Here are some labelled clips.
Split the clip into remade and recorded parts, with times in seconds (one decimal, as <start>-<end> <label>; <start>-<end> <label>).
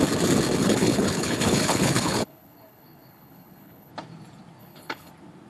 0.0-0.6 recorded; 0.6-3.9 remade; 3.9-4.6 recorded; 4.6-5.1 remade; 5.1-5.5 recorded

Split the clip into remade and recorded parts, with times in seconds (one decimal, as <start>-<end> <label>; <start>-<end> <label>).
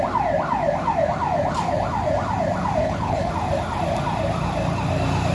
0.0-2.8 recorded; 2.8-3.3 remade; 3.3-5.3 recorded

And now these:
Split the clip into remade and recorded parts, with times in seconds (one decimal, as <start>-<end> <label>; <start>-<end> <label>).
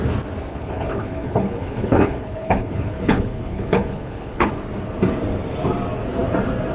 0.0-0.5 recorded; 0.5-4.5 remade; 4.5-6.7 recorded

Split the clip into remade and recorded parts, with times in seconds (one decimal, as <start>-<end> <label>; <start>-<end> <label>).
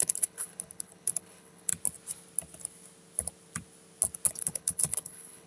0.0-1.7 remade; 1.7-4.3 recorded; 4.3-5.5 remade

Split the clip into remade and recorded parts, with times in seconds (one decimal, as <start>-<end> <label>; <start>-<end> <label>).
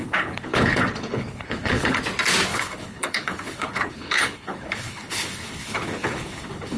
0.0-2.0 remade; 2.0-2.5 recorded; 2.5-6.8 remade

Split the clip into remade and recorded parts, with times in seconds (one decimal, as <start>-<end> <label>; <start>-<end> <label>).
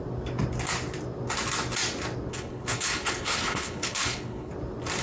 0.0-2.3 recorded; 2.3-4.5 remade; 4.5-5.0 recorded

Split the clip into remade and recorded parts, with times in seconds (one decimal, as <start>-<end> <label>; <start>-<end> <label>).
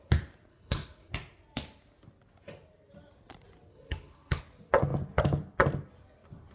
0.0-0.5 recorded; 0.5-1.1 remade; 1.1-3.7 recorded; 3.7-4.4 remade; 4.4-6.5 recorded